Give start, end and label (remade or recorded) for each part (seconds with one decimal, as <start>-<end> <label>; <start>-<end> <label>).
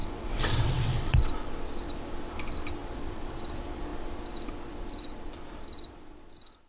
0.0-1.3 remade; 1.3-2.8 recorded; 2.8-3.4 remade; 3.4-6.7 recorded